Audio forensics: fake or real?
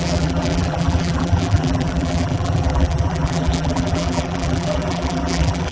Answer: fake